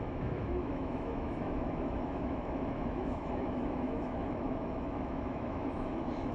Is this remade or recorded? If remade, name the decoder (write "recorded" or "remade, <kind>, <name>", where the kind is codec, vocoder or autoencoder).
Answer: remade, autoencoder, DAC-VAE